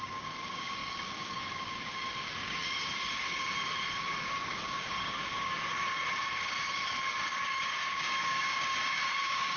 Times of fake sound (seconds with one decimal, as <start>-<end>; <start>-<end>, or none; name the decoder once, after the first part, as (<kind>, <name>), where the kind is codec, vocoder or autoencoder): 0.0-9.6 (codec, DAC)